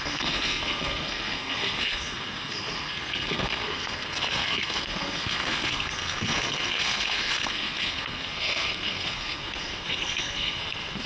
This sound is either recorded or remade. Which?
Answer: remade